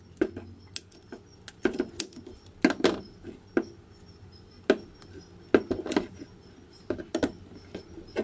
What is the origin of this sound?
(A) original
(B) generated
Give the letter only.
A